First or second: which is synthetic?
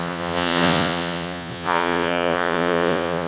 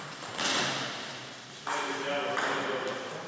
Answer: first